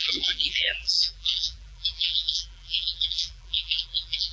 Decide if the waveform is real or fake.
fake